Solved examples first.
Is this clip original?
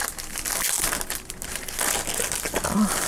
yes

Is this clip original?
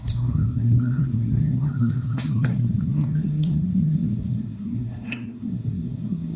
no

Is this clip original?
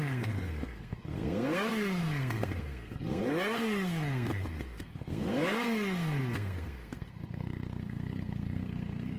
no